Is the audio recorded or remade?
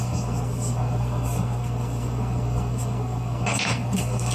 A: remade